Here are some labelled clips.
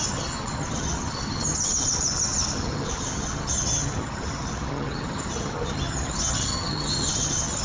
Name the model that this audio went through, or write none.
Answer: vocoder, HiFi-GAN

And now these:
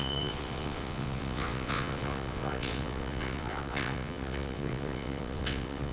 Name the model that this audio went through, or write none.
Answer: vocoder, WaveNeXt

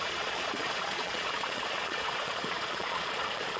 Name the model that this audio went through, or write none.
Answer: vocoder, Vocos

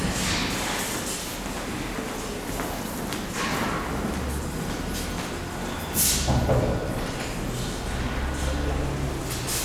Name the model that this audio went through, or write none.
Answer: none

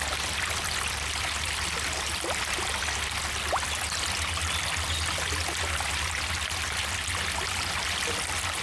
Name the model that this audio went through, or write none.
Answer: none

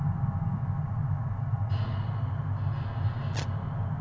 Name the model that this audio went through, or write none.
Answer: none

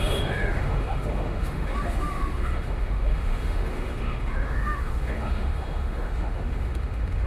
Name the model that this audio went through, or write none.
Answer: autoencoder, DAC-VAE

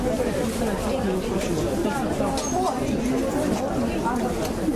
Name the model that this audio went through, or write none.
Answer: none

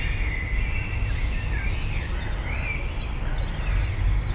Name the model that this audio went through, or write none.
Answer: none